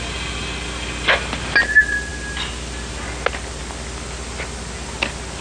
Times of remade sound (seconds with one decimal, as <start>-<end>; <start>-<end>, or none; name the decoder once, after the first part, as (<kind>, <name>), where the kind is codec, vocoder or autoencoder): none